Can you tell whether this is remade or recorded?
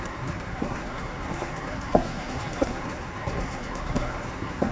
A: remade